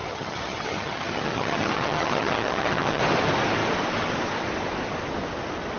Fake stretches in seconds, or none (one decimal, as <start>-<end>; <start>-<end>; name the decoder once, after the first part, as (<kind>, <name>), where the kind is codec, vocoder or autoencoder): 0.0-3.0 (vocoder, HiFi-GAN)